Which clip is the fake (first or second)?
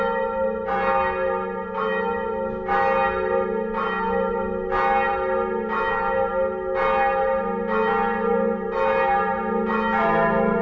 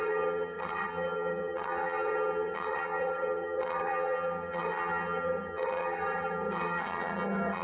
second